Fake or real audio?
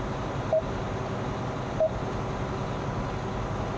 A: real